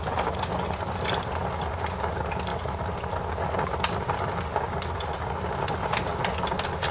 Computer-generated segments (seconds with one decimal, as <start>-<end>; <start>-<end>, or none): none